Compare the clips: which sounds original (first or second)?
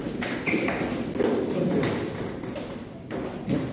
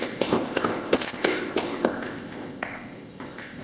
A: first